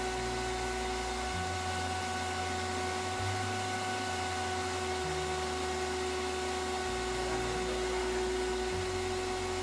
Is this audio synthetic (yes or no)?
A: no